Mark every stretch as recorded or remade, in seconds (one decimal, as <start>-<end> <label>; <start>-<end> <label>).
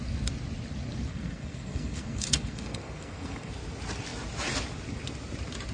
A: 0.0-1.1 recorded; 1.1-3.5 remade; 3.5-5.7 recorded